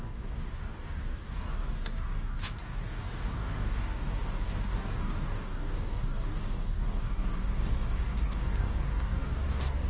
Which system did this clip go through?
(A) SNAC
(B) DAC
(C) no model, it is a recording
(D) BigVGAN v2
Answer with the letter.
B